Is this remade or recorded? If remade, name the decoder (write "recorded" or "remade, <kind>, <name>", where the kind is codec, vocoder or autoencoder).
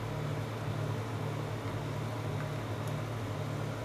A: recorded